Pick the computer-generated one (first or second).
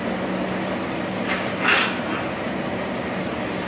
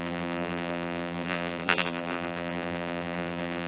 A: second